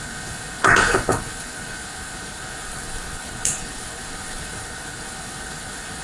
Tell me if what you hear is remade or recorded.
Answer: remade